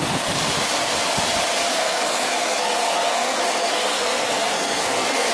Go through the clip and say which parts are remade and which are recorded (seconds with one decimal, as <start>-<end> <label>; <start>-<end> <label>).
0.0-1.7 recorded; 1.7-5.3 remade